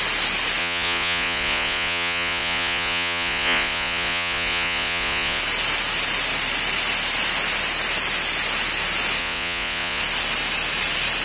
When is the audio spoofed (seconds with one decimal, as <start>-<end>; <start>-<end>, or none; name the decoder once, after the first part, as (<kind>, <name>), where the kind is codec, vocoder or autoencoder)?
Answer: 0.6-5.4 (vocoder, Vocos); 9.2-10.0

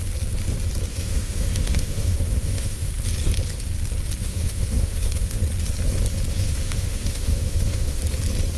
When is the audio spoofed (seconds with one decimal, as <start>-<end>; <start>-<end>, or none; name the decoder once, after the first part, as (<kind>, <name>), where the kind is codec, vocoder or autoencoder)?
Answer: 0.9-2.9 (autoencoder, DAC-VAE); 4.2-5.4; 6.3-8.0

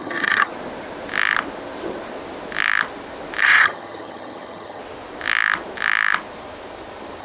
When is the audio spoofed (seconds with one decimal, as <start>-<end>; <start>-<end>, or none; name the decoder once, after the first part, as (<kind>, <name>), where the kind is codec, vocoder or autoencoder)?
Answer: 0.0-0.5 (vocoder, HiFi-GAN); 3.4-4.8

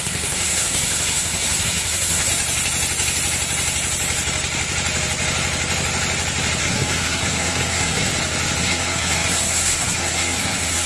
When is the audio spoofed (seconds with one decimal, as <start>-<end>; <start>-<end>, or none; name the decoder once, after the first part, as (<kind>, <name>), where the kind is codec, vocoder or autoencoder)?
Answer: 0.0-2.3 (codec, SNAC); 6.6-8.1; 8.6-10.9